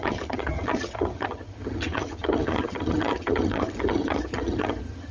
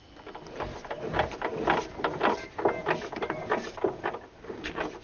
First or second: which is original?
second